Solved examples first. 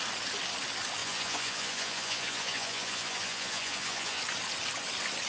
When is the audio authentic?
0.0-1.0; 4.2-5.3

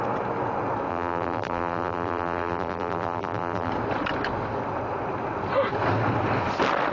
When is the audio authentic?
0.0-0.9; 3.7-6.9

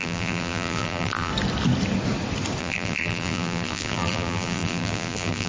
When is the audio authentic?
1.3-2.6

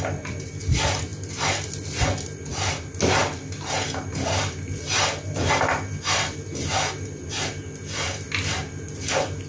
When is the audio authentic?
0.0-9.5